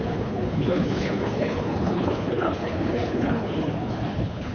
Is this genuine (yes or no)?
no